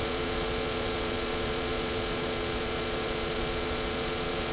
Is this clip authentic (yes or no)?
no